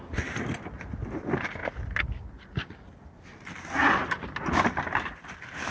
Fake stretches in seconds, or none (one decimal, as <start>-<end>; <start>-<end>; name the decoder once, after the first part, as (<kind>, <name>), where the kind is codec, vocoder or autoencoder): none